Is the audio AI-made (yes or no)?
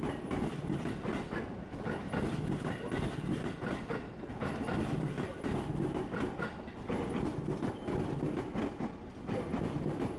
no